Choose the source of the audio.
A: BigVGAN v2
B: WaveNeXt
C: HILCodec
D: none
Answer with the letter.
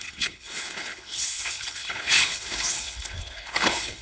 C